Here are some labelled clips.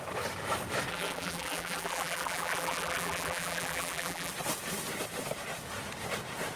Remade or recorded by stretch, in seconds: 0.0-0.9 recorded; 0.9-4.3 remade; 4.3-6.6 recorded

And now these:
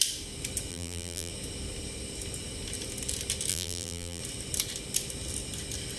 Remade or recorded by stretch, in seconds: 0.0-0.7 recorded; 0.7-1.3 remade; 1.3-3.5 recorded; 3.5-4.2 remade; 4.2-6.0 recorded

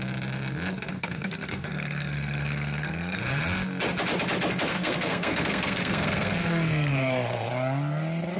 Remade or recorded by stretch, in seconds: 0.0-0.9 recorded; 0.9-3.2 remade; 3.2-4.7 recorded; 4.7-7.5 remade; 7.5-8.4 recorded

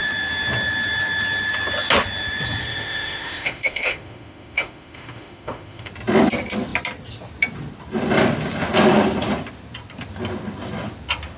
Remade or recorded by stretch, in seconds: 0.0-2.6 recorded; 2.6-5.9 remade; 5.9-11.4 recorded